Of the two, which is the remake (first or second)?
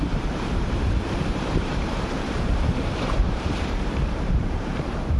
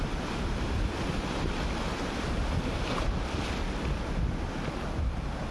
first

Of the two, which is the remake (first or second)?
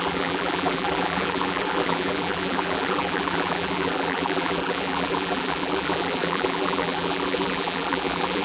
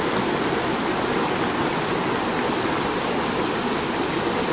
first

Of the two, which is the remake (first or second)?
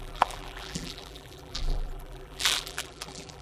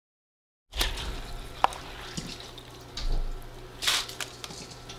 first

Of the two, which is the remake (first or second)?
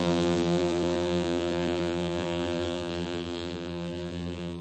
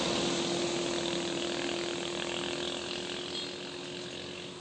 first